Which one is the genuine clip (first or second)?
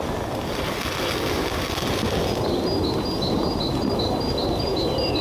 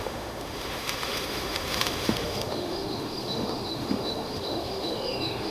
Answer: first